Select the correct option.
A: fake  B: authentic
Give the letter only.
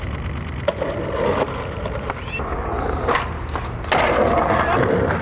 B